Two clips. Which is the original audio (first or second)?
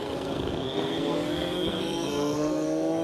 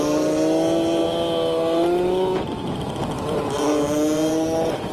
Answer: second